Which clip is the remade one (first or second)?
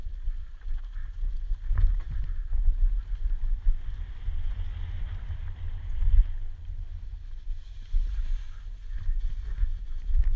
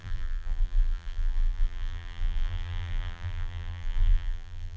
second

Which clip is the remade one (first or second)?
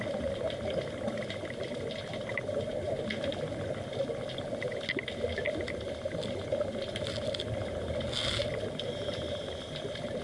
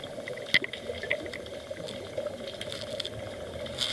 first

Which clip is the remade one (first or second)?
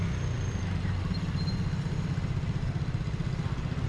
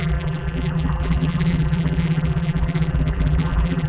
second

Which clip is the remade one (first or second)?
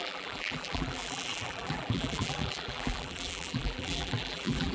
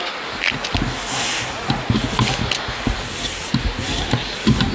first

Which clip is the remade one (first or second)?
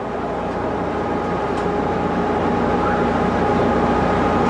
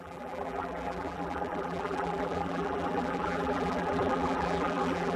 second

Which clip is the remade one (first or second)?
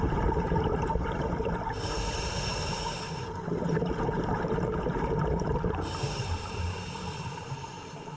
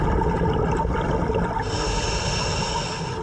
first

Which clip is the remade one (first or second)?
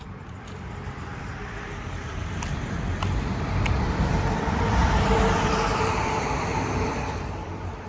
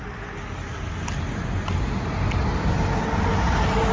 first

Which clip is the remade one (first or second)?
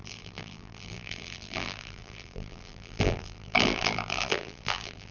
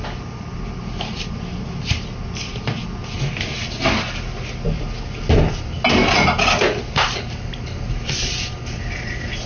first